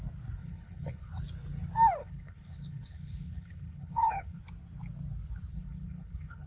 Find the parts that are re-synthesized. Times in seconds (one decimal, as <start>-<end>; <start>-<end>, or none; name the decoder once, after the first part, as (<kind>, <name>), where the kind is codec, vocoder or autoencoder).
0.4-1.1 (codec, HILCodec); 2.0-4.4; 5.5-6.5